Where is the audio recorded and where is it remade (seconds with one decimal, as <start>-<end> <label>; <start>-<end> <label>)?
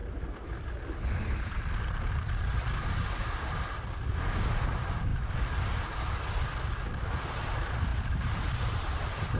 0.0-4.6 recorded; 4.6-5.1 remade; 5.1-7.3 recorded; 7.3-9.4 remade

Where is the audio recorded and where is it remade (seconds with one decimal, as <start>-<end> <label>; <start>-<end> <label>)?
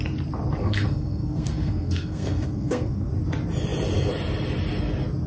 0.0-0.6 recorded; 0.6-3.1 remade; 3.1-5.3 recorded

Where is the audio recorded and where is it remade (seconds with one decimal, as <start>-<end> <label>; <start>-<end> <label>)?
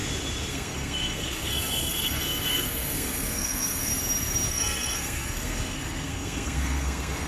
0.0-0.5 recorded; 0.5-3.9 remade; 3.9-4.5 recorded; 4.5-7.3 remade